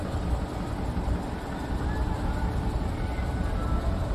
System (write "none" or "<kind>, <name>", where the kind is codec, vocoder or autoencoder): none